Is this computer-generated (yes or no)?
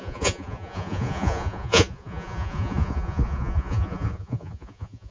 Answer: yes